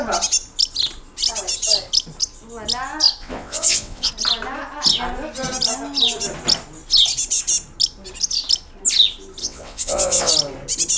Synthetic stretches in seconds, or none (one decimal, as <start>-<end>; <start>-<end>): 3.2-4.1; 9.4-10.3